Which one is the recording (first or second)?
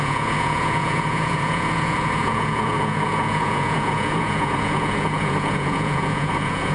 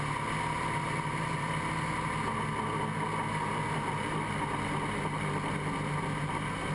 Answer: second